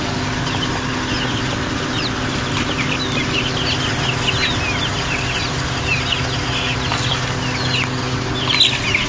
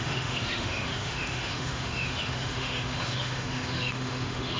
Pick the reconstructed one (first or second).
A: second